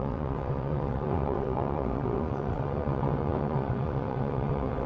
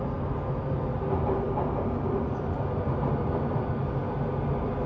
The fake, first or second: first